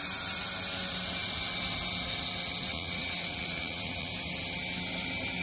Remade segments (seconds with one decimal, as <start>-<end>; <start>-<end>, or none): 2.7-4.1